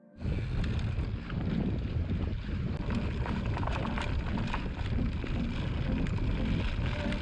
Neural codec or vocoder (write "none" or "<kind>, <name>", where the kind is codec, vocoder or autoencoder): none